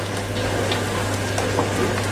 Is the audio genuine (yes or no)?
yes